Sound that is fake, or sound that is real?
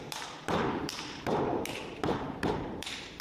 fake